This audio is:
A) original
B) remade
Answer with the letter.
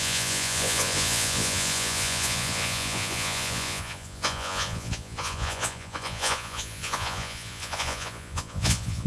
B